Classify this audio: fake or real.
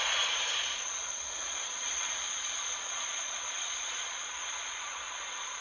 fake